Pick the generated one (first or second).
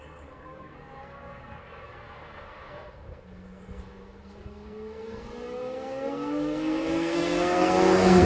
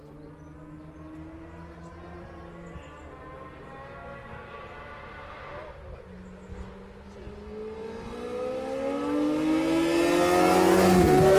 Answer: first